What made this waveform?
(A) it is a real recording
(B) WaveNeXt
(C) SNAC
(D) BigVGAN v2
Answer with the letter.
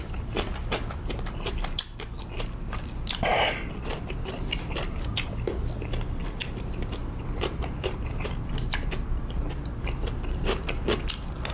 A